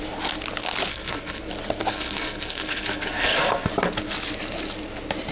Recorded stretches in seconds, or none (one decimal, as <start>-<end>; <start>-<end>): 0.0-0.9; 1.4-1.9; 3.7-5.3